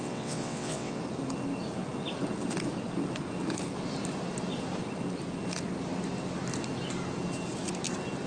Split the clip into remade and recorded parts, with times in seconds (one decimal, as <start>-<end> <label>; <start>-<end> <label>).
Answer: 0.0-1.0 remade; 1.0-8.3 recorded